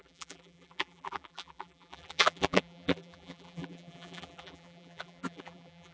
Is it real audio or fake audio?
fake